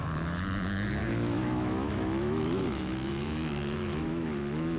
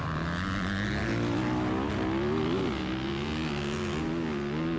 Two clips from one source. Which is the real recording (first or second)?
second